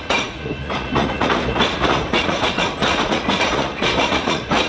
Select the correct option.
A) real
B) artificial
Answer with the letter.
B